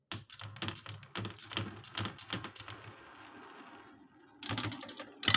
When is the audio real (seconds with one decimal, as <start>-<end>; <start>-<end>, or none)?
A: 0.0-5.4